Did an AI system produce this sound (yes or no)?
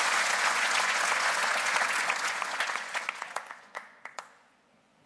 yes